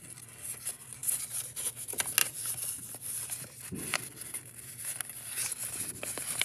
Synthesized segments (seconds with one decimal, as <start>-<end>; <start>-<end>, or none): 2.2-5.5